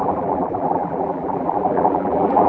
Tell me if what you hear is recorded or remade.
remade